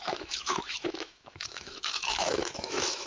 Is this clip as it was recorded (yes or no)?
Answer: no